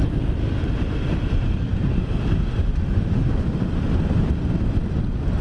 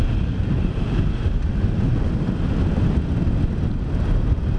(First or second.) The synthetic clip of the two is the first